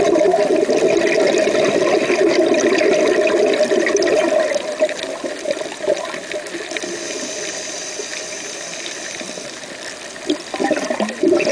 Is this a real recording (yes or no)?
yes